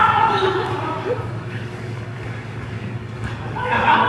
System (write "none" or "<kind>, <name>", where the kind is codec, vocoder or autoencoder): codec, DAC